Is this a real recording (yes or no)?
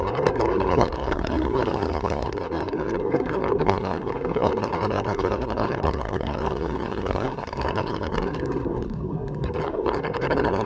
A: no